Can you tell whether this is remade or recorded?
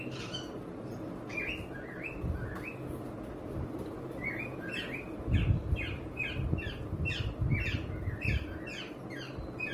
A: recorded